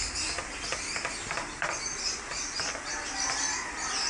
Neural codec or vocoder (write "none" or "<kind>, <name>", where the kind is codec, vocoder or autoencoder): none